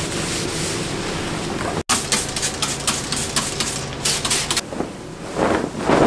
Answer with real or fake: real